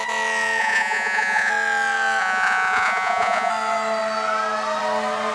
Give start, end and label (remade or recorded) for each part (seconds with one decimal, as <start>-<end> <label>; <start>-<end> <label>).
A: 0.0-0.6 recorded; 0.6-1.5 remade; 1.5-2.2 recorded; 2.2-3.5 remade; 3.5-5.3 recorded